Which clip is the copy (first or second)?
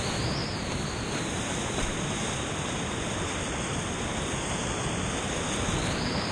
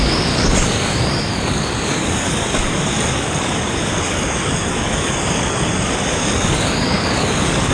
second